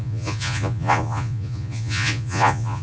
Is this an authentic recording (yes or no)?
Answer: no